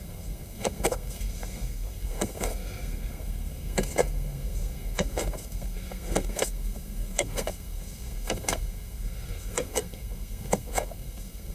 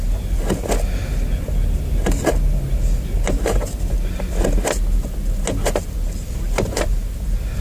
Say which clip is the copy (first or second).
first